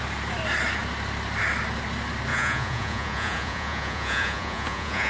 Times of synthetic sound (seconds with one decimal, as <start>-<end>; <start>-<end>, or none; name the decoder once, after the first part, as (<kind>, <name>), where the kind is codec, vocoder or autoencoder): 2.3-5.1 (vocoder, Vocos)